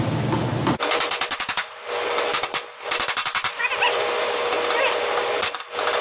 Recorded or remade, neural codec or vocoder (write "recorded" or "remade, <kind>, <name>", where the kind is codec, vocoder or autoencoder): recorded